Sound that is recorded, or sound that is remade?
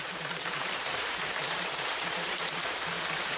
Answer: remade